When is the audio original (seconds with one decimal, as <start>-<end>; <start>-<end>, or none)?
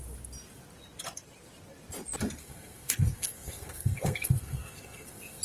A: 0.0-2.4